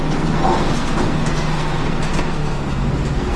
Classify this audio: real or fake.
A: fake